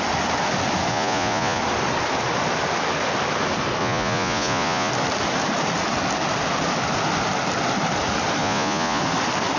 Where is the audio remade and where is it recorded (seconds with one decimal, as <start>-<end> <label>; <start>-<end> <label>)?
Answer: 0.0-0.9 recorded; 0.9-1.6 remade; 1.6-3.8 recorded; 3.8-4.9 remade; 4.9-8.4 recorded; 8.4-9.0 remade; 9.0-9.6 recorded